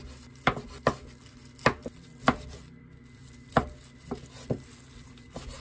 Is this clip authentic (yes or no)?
yes